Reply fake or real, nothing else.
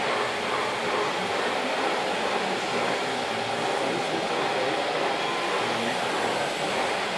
real